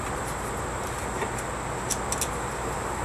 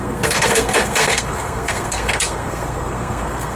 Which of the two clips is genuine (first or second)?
first